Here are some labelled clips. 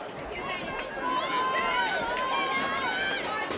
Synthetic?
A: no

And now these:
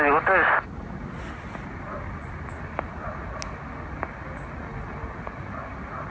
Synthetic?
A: no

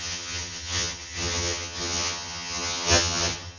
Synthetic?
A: yes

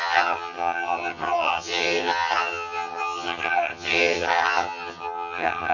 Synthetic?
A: yes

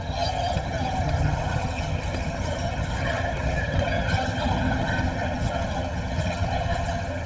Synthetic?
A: yes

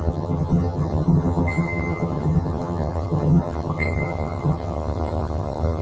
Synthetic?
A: yes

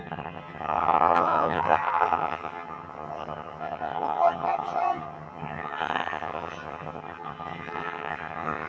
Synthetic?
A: yes